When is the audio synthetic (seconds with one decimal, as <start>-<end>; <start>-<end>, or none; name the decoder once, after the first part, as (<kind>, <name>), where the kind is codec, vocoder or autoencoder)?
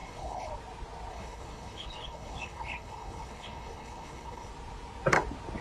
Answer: 0.0-0.5 (codec, HILCodec); 1.1-4.5